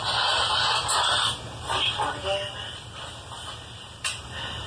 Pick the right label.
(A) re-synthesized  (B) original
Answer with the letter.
B